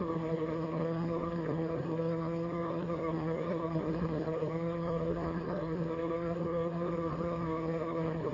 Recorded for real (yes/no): no